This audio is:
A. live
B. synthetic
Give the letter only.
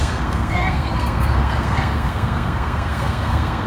B